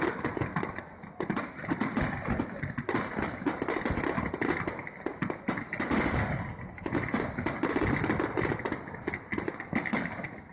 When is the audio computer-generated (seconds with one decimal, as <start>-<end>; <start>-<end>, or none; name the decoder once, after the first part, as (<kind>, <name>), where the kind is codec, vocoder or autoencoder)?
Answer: none